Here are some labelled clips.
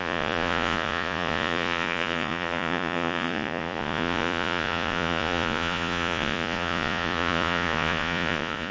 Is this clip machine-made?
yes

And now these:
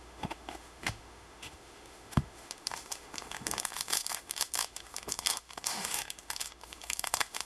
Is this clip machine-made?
yes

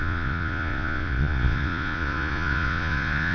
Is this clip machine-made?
yes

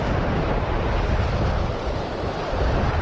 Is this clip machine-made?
yes